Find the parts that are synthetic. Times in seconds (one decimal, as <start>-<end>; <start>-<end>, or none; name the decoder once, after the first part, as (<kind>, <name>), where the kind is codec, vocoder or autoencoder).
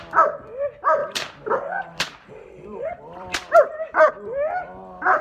1.0-4.1 (vocoder, BigVGAN v2)